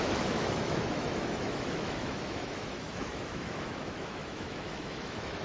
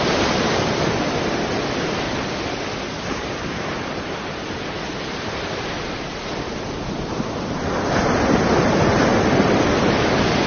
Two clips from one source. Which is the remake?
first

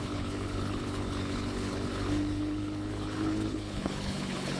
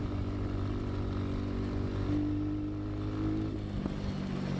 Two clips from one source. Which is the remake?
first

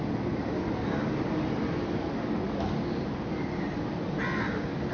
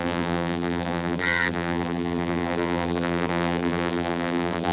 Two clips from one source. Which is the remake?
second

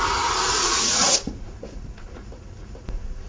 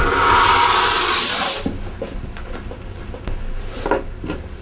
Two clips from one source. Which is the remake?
first